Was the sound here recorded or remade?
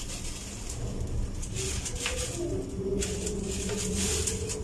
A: recorded